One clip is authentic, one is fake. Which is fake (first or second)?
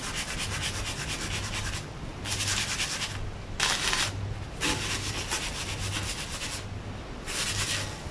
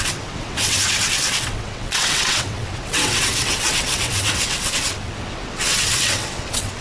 second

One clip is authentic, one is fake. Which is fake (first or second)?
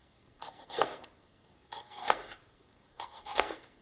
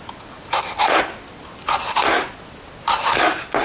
first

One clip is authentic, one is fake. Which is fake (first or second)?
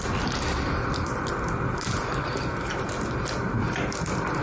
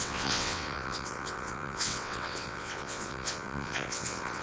second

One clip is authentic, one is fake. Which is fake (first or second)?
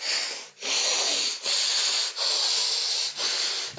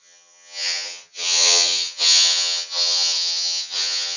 second